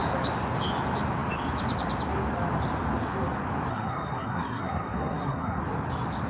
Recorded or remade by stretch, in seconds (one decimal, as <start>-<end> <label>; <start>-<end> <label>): 0.0-3.7 recorded; 3.7-5.6 remade; 5.6-6.3 recorded